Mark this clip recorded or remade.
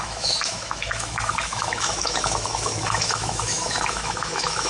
remade